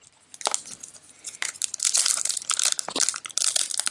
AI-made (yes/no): no